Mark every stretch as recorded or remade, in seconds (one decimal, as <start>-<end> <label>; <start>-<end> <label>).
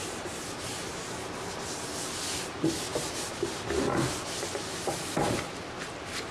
0.0-6.3 recorded